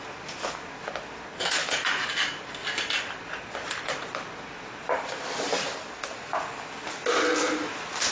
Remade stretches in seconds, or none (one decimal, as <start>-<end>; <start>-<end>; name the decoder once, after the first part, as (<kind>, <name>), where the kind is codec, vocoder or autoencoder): none